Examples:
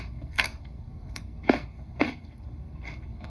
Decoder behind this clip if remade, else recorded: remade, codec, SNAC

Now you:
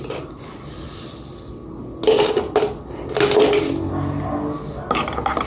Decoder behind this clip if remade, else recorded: recorded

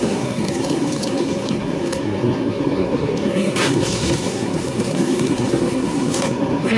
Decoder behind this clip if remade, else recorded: remade, codec, SNAC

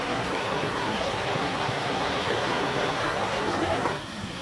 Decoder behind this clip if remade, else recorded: remade, codec, SNAC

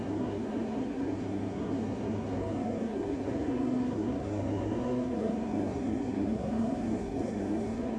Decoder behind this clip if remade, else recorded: remade, codec, SNAC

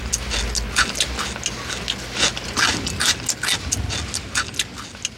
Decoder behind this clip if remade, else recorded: recorded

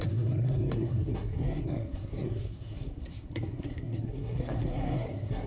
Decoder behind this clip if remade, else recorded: remade, codec, SNAC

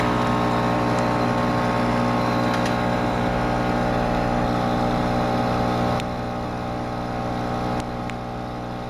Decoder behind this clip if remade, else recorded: recorded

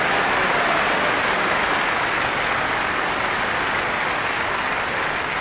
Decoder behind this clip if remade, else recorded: recorded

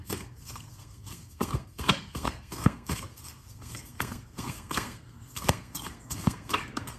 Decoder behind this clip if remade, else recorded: remade, codec, SNAC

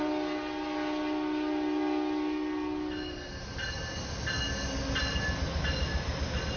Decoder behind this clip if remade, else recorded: recorded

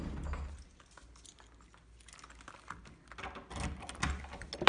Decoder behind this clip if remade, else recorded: recorded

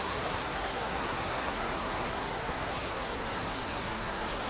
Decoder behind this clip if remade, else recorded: remade, codec, SNAC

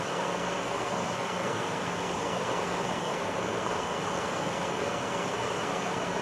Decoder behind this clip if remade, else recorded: remade, codec, SNAC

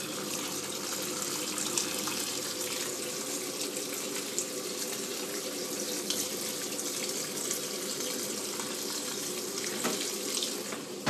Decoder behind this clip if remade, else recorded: recorded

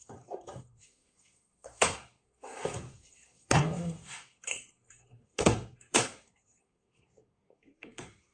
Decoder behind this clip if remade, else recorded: remade, codec, SNAC